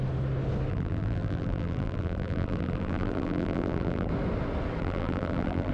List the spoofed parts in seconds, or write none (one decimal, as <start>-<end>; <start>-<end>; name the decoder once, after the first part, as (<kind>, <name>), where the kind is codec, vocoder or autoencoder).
0.7-4.1 (vocoder, BigVGAN v2); 4.8-5.7